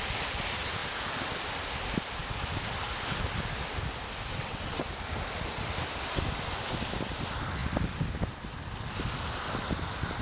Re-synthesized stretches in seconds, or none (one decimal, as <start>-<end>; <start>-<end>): 4.3-4.9